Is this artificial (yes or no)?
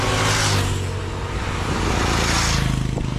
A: no